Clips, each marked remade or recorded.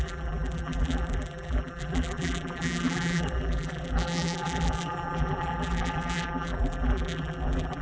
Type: remade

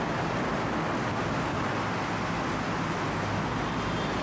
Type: recorded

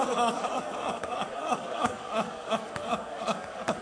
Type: remade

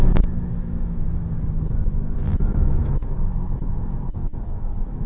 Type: remade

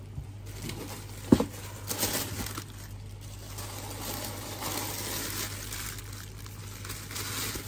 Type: recorded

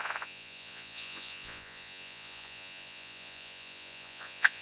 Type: remade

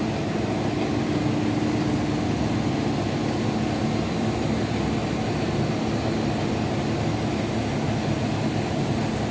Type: recorded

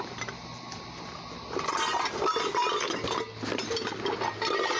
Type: recorded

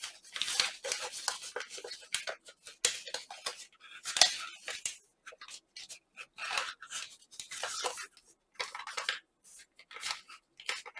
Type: recorded